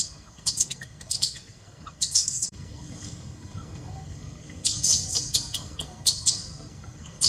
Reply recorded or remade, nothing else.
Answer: remade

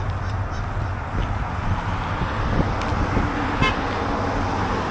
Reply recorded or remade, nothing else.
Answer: recorded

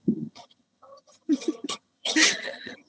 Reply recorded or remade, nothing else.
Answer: remade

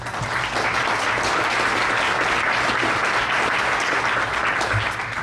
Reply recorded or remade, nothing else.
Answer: recorded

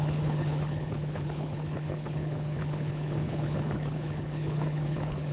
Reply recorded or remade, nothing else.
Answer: remade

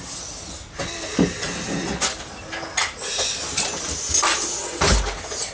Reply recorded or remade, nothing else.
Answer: recorded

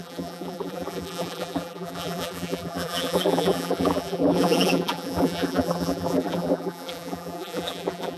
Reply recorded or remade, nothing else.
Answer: remade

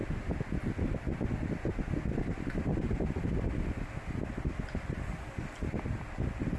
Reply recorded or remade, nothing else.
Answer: recorded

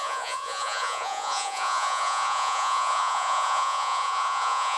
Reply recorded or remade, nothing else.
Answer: remade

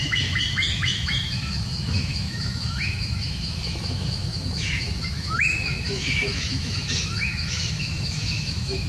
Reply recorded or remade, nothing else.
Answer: remade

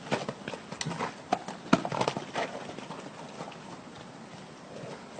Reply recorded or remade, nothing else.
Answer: recorded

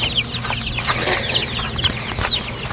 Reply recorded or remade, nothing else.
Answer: recorded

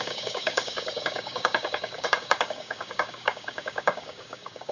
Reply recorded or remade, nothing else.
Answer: remade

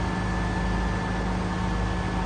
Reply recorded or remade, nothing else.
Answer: recorded